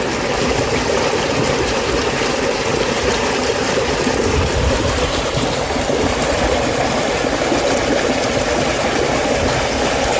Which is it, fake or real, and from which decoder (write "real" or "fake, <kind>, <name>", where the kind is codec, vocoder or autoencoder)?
real